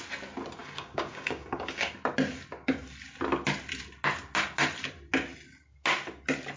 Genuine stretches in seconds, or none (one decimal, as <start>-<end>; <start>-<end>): 0.0-0.6; 1.9-6.6